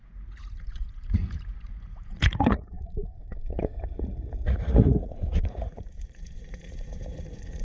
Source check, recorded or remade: remade